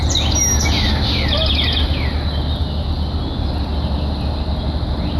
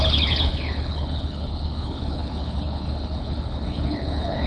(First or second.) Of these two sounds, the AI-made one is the second